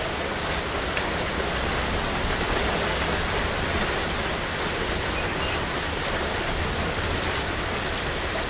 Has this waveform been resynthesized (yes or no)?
no